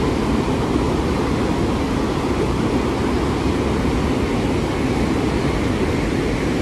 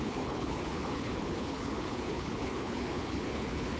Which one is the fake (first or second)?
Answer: second